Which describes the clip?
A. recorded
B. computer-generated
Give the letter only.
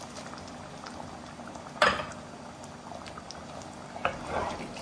A